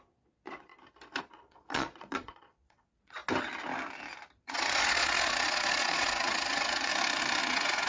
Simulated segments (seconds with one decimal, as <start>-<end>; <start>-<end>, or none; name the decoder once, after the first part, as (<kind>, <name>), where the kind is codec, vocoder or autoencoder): 0.0-0.7 (vocoder, Vocos); 1.2-3.2; 4.4-6.9; 7.4-7.9